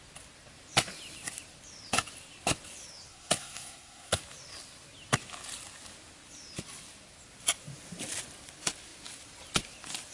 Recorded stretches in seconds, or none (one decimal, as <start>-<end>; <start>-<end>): 0.0-3.1; 4.2-10.1

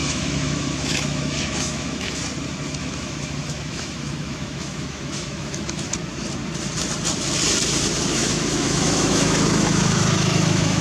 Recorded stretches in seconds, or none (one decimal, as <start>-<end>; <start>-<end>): 2.2-2.8; 6.0-8.1

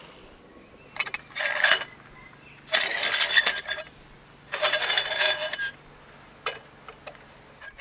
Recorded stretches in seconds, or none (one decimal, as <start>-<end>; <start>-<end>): 0.0-7.8